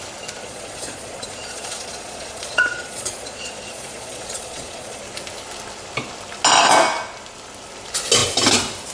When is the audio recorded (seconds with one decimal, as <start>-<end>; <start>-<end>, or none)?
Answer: 0.0-0.4; 5.0-8.9